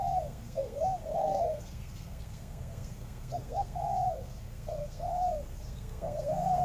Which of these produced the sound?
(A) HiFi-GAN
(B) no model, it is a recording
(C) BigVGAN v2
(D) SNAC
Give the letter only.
D